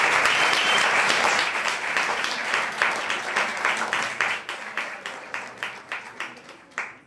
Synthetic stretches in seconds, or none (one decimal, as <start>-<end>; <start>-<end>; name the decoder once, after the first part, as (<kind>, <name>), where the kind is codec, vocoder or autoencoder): 0.0-7.1 (vocoder, BigVGAN v2)